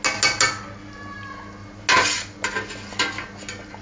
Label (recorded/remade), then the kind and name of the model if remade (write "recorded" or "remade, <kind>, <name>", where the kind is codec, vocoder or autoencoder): recorded